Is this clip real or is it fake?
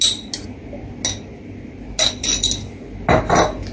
real